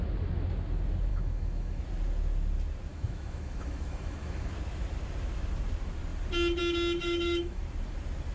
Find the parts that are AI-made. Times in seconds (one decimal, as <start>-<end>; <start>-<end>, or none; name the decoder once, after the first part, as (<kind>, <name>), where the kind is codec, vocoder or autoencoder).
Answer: 1.1-1.8 (autoencoder, DAC-VAE); 2.9-4.5; 7.0-7.6